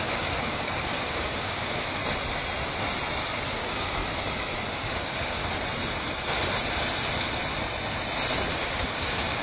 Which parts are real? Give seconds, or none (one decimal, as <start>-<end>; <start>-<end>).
2.0-3.5; 4.0-4.7; 5.4-8.5